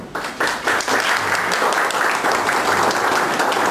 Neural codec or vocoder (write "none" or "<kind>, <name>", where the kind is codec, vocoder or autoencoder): none